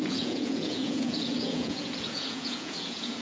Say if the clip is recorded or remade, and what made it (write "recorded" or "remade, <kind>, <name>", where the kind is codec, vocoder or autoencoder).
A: remade, vocoder, Vocos